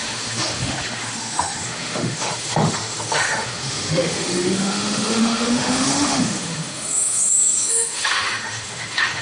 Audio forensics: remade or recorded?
remade